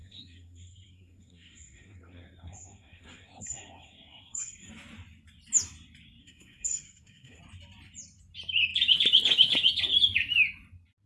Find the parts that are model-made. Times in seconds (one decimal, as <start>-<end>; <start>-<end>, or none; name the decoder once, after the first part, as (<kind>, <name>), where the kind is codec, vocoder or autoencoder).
0.0-4.7 (codec, SNAC); 6.2-7.4